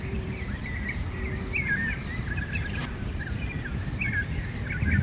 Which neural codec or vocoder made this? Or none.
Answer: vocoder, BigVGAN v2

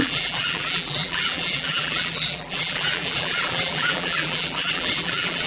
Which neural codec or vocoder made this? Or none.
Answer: vocoder, BigVGAN v2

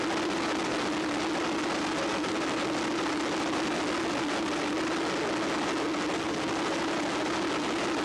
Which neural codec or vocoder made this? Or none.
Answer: none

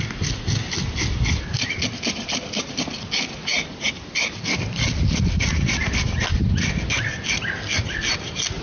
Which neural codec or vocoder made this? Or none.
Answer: none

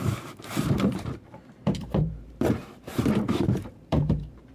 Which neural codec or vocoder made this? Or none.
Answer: vocoder, BigVGAN v2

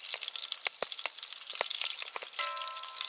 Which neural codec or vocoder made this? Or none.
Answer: none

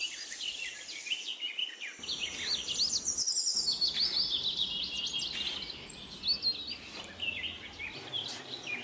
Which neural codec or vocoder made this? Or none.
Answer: none